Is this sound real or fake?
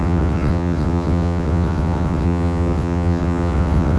fake